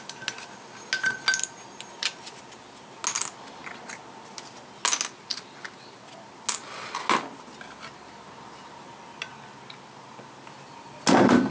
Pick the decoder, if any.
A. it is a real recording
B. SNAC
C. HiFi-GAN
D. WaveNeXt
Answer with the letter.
A